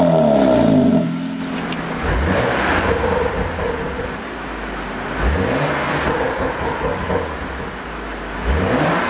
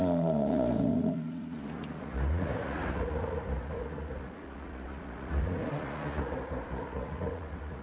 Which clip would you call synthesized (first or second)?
second